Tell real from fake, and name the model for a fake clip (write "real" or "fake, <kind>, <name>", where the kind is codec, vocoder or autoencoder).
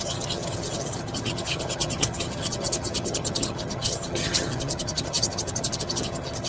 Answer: fake, vocoder, HiFi-GAN